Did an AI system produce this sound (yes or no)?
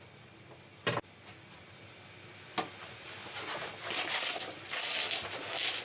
no